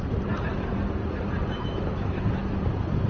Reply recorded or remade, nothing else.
recorded